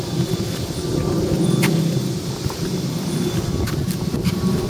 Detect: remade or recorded recorded